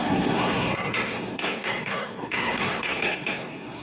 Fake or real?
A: fake